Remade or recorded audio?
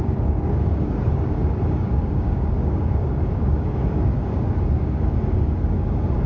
remade